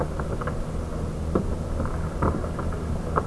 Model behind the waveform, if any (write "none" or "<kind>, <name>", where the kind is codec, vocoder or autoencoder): none